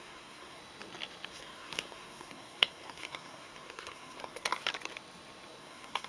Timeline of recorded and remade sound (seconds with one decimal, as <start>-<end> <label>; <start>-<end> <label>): 0.0-0.6 remade; 0.6-1.3 recorded; 1.3-4.5 remade; 4.5-5.6 recorded; 5.6-6.1 remade